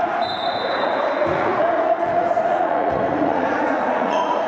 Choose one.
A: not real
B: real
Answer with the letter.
A